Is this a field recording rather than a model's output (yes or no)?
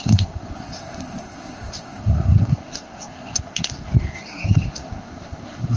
no